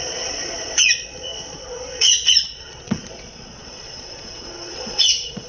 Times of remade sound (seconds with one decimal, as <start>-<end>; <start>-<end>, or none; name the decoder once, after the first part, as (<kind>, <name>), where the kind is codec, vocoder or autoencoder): 0.0-5.5 (vocoder, Vocos)

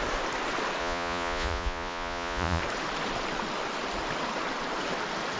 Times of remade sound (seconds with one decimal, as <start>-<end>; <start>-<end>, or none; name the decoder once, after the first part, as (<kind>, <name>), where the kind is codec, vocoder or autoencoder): 0.8-2.6 (vocoder, Vocos)

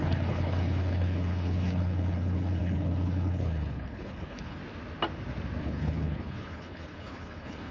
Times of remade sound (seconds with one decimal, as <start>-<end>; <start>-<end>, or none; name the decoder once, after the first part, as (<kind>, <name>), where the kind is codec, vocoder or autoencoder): 0.0-4.6 (codec, HILCodec); 5.6-7.7

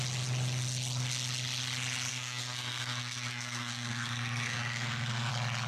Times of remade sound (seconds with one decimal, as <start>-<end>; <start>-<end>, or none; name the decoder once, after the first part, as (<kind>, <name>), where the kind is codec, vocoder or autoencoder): 2.1-5.3 (codec, SNAC)

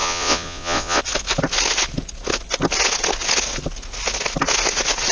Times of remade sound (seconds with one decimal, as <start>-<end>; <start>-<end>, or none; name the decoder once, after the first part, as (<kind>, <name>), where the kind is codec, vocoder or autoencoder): 0.0-1.0 (vocoder, Vocos)

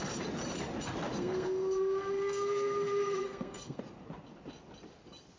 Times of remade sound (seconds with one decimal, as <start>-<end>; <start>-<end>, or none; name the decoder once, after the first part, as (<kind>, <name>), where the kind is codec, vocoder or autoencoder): 1.2-3.8 (codec, SNAC)

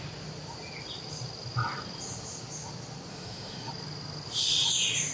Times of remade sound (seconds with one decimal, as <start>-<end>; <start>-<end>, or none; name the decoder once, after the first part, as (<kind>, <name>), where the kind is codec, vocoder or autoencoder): 3.1-3.7 (autoencoder, DAC-VAE)